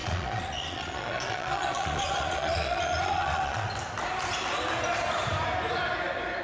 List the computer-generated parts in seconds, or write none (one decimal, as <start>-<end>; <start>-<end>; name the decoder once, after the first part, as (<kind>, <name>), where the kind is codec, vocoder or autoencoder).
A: 0.0-3.7 (vocoder, Vocos)